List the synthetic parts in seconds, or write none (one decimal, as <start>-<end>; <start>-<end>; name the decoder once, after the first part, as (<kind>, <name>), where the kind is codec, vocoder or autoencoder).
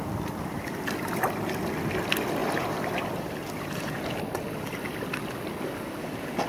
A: 2.4-4.1 (vocoder, BigVGAN v2)